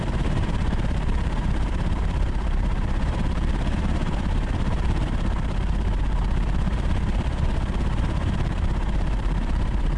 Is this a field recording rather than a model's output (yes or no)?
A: no